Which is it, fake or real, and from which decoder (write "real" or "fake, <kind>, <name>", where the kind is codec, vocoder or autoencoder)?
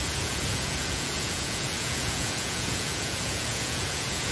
fake, vocoder, Vocos